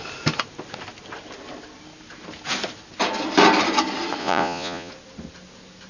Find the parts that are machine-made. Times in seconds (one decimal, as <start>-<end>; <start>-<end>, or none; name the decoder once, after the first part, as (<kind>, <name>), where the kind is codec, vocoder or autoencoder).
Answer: 4.2-4.9 (vocoder, Vocos)